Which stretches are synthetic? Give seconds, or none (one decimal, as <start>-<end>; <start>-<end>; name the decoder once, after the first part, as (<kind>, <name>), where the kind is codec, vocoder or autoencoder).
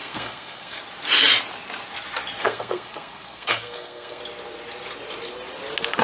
0.0-0.8 (codec, SNAC); 2.4-4.2